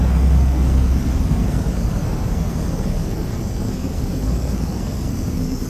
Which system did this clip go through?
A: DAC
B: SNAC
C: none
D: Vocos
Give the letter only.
B